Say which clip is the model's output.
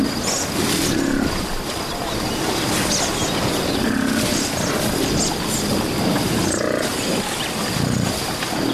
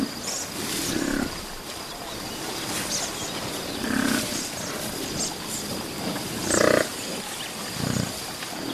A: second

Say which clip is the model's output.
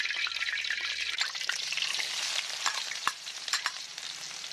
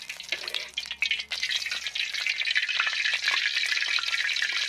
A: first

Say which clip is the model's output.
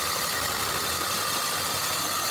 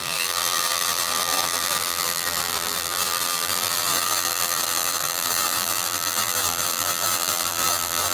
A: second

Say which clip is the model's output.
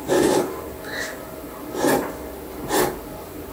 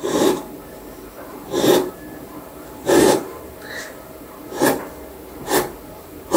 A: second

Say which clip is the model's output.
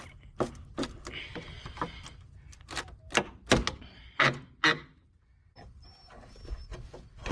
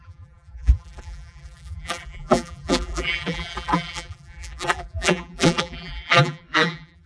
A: second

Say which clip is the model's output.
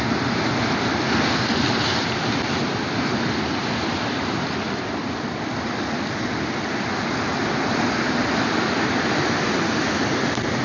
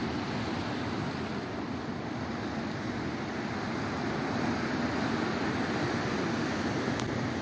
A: first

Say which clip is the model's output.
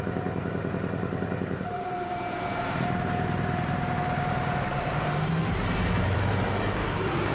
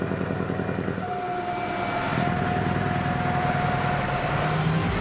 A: first